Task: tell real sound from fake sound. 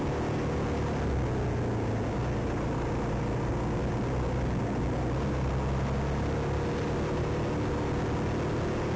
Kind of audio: real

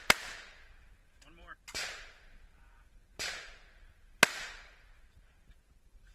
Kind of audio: fake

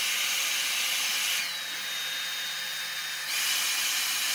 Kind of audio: real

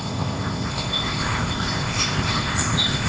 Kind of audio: fake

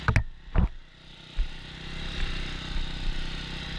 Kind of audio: real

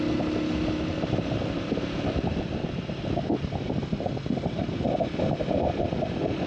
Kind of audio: real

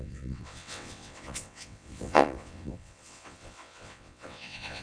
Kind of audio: fake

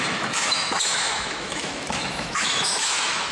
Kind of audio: fake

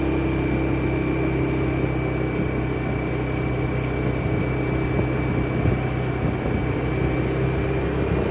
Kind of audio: real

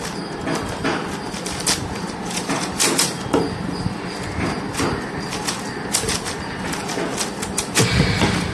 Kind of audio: real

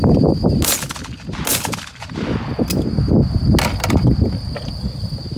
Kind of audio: real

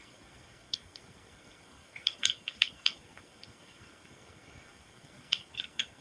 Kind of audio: fake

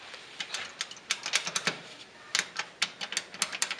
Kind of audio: real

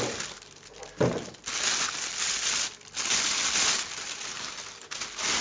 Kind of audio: real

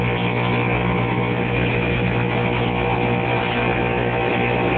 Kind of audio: real